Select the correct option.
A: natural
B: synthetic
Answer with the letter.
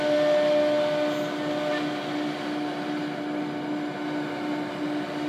A